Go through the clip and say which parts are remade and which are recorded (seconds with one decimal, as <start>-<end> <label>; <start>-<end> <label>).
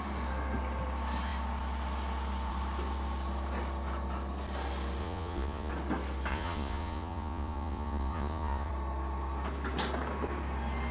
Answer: 0.0-5.0 recorded; 5.0-5.7 remade; 5.7-6.3 recorded; 6.3-8.7 remade; 8.7-10.9 recorded